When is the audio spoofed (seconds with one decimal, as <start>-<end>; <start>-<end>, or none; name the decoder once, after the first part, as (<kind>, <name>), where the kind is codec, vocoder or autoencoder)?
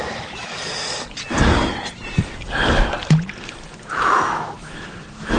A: 0.0-0.5 (autoencoder, DAC-VAE); 3.7-5.4